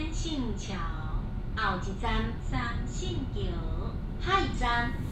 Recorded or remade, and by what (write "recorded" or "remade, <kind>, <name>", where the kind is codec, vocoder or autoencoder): recorded